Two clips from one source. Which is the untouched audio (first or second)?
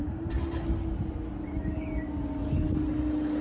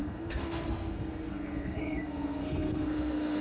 first